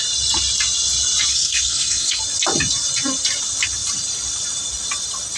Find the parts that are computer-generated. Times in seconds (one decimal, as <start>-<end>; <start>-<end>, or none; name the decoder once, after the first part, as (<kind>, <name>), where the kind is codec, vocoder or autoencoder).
1.3-2.2 (codec, SNAC)